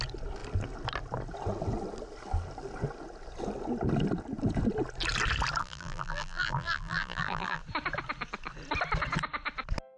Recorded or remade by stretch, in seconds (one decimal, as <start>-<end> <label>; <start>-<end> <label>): 0.0-5.6 recorded; 5.6-7.6 remade; 7.6-10.0 recorded